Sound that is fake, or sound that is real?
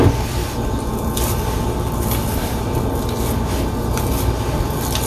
real